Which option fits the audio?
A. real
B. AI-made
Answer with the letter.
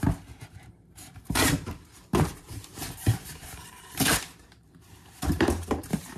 B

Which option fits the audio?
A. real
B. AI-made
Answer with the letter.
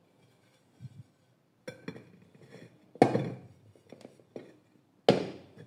A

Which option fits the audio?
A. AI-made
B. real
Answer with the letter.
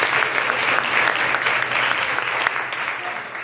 B